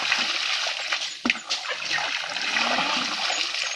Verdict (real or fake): real